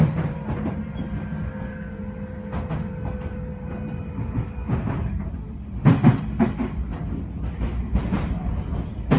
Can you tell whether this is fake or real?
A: real